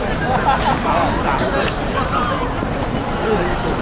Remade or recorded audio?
recorded